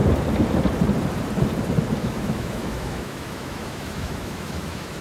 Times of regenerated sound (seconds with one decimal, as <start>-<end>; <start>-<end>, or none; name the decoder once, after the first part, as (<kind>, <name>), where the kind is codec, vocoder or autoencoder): 2.0-5.0 (autoencoder, DAC-VAE)